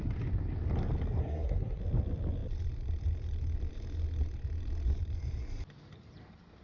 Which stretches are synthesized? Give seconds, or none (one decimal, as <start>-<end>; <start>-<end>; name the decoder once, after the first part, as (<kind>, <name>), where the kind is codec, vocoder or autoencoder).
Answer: 1.2-1.8 (codec, SNAC)